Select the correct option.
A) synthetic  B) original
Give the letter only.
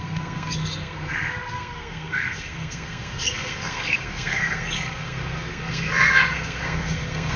A